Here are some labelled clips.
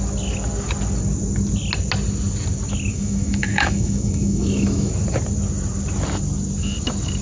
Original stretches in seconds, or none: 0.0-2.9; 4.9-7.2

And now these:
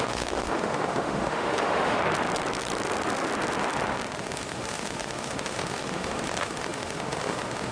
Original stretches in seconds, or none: 2.0-4.2

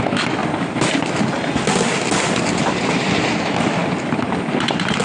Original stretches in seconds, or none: 0.4-3.4; 3.8-5.0

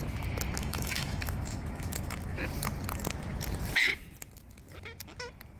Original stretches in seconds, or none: 0.0-0.6; 2.4-5.6

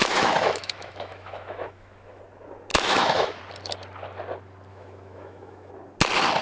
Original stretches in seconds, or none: 2.2-2.7; 3.4-4.7; 5.7-6.4

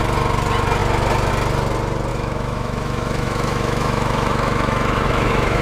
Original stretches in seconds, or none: 0.0-2.1